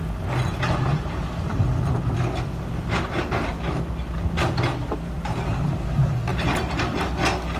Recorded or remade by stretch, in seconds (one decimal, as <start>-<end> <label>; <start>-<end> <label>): 0.0-0.9 recorded; 0.9-3.0 remade; 3.0-4.8 recorded; 4.8-7.0 remade; 7.0-7.6 recorded

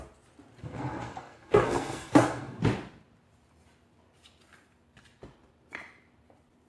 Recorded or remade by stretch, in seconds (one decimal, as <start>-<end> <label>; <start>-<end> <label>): 0.0-0.6 recorded; 0.6-2.6 remade; 2.6-6.7 recorded

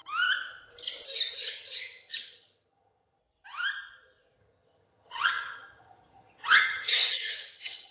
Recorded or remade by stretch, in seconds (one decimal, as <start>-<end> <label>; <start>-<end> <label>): 0.0-1.3 recorded; 1.3-3.2 remade; 3.2-4.4 recorded; 4.4-7.9 remade

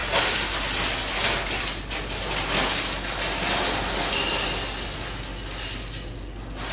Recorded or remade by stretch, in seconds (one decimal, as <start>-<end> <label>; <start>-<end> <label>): 0.0-6.7 recorded

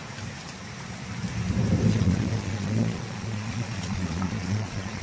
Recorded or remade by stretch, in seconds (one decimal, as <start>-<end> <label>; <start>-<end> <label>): 0.0-1.9 recorded; 1.9-5.0 remade

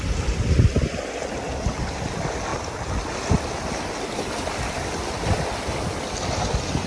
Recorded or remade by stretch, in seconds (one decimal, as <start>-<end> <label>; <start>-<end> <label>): 0.0-6.9 recorded

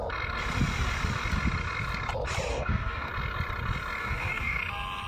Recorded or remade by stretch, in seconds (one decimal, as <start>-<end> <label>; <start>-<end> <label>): 0.0-2.5 recorded; 2.5-3.1 remade; 3.1-4.0 recorded; 4.0-4.6 remade; 4.6-5.1 recorded

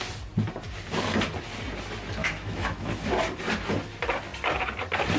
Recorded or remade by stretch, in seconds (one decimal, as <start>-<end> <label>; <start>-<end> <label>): 0.0-2.2 recorded; 2.2-2.9 remade; 2.9-5.2 recorded